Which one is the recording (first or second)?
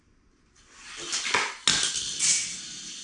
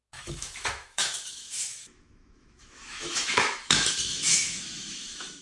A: first